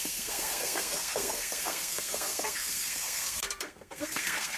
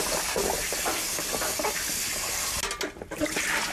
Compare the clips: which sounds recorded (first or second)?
second